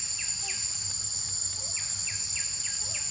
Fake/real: real